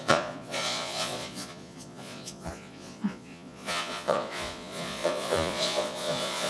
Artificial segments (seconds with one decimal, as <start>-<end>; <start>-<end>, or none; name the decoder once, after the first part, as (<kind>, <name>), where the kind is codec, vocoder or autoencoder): 0.0-6.5 (vocoder, Vocos)